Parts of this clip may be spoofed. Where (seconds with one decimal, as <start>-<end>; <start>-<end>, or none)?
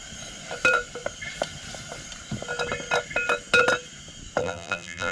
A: 4.4-5.1